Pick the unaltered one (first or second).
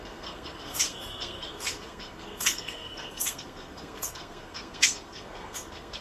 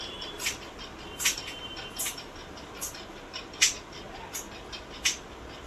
second